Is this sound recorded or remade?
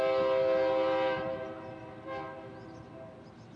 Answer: recorded